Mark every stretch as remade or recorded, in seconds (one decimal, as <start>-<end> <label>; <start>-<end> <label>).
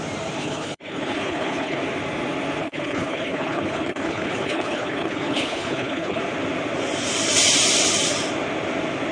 0.0-0.4 recorded; 0.4-1.8 remade; 1.8-2.6 recorded; 2.6-6.2 remade; 6.2-9.1 recorded